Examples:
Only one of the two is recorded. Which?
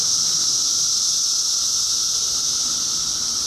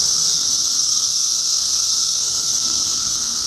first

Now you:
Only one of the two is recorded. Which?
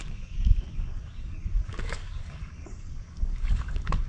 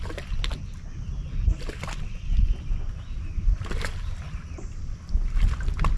second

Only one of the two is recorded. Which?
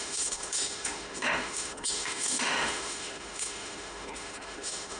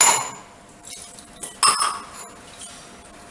second